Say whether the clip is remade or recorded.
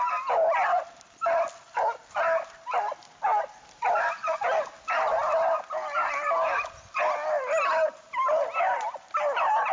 recorded